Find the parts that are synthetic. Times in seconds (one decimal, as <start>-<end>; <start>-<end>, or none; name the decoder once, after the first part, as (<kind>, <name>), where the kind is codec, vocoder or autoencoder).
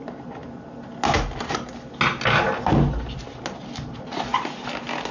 none